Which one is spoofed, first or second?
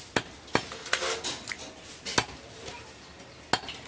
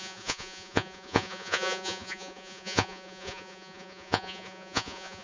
second